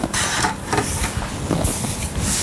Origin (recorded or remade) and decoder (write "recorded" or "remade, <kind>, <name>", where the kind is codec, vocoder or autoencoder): recorded